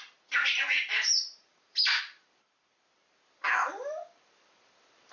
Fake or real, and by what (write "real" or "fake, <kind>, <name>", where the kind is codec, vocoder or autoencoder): fake, vocoder, BigVGAN v2